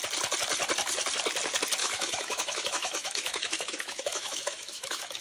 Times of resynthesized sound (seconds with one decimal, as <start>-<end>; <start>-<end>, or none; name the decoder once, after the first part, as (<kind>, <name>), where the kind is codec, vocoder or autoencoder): 1.8-5.2 (autoencoder, DAC-VAE)